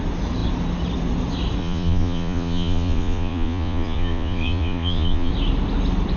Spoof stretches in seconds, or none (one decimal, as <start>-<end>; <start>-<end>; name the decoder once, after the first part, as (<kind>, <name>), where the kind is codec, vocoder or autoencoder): 1.6-5.3 (vocoder, Vocos)